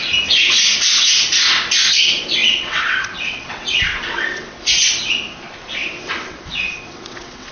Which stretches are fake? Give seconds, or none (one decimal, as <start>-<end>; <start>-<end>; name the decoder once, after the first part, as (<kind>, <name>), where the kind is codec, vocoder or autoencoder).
2.4-4.9 (vocoder, WaveNeXt); 5.8-7.5